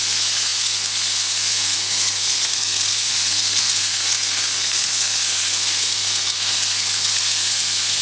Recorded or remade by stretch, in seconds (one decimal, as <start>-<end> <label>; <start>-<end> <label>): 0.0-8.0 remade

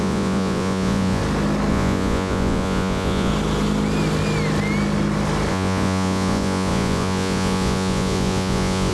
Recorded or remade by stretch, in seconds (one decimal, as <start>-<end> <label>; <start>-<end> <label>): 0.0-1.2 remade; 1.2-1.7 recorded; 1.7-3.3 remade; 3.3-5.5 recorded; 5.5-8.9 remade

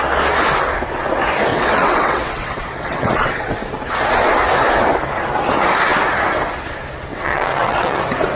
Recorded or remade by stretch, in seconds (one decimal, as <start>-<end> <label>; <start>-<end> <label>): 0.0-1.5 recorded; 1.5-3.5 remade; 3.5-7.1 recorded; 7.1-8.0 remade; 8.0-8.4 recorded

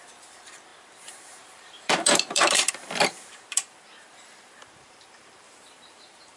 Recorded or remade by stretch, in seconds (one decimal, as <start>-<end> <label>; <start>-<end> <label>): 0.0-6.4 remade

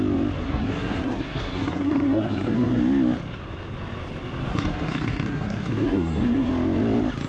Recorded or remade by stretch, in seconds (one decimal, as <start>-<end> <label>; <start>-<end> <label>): 0.0-0.4 recorded; 0.4-2.8 remade; 2.8-4.5 recorded; 4.5-6.5 remade; 6.5-7.3 recorded

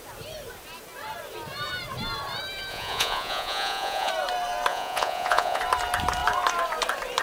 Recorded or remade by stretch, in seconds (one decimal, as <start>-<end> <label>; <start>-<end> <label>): 0.0-2.7 recorded; 2.7-4.1 remade; 4.1-4.7 recorded; 4.7-5.6 remade; 5.6-7.2 recorded

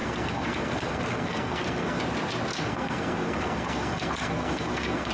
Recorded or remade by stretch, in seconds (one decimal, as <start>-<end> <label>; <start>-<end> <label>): 0.0-2.0 remade; 2.0-2.5 recorded; 2.5-5.1 remade

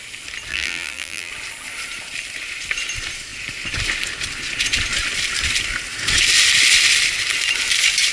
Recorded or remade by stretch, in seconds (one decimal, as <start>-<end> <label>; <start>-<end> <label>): 0.0-0.5 recorded; 0.5-1.3 remade; 1.3-8.1 recorded